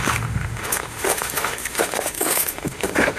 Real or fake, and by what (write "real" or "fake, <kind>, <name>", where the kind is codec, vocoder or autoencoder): fake, autoencoder, DAC-VAE